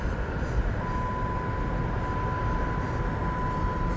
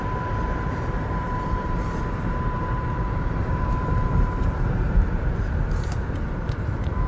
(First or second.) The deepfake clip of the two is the second